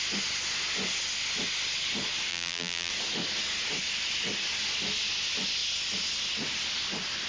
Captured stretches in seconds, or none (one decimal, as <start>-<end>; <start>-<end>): 0.0-2.3; 2.9-7.3